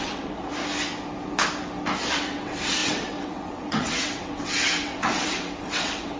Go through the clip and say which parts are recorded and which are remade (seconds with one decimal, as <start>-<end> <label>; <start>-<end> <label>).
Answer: 0.0-0.5 remade; 0.5-2.1 recorded; 2.1-6.2 remade